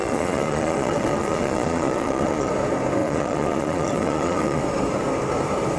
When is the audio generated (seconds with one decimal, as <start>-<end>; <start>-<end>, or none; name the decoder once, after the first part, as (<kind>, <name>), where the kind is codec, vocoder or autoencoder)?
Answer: 0.0-2.5 (vocoder, Vocos); 3.0-4.6